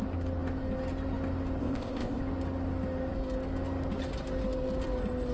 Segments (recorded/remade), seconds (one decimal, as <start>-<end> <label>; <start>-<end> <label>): 0.0-1.6 recorded; 1.6-2.2 remade; 2.2-5.3 recorded

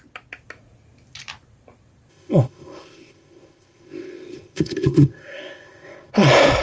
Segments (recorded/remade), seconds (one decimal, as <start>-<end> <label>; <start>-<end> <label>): 0.0-2.1 recorded; 2.1-6.1 remade; 6.1-6.6 recorded